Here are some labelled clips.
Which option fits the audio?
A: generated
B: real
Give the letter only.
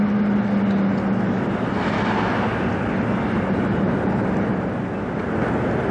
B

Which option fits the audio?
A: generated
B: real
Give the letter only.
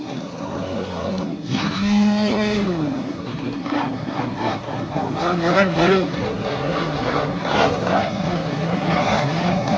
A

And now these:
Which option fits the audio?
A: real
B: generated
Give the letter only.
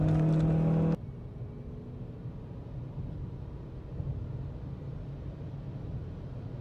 A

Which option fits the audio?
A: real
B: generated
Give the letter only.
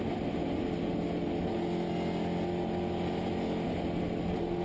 A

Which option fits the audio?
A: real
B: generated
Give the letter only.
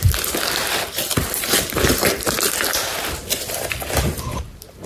B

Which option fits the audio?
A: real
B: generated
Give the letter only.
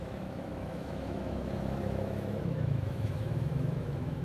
B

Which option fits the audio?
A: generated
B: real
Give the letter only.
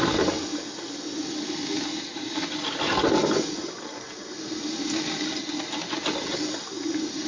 B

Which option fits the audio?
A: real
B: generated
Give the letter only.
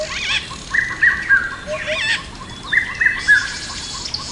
A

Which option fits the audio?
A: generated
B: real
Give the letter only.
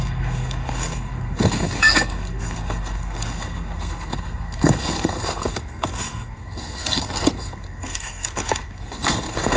A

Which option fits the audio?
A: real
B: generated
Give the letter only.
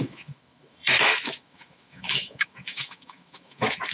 B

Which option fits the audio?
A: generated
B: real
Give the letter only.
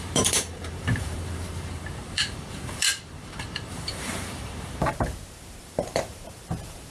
A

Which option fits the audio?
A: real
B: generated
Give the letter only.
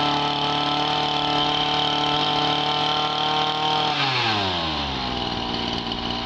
A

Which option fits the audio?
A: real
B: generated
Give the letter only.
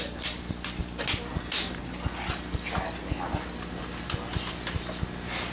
A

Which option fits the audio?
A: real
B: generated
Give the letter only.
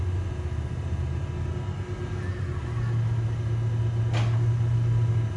A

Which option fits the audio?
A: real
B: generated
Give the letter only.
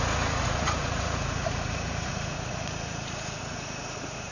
B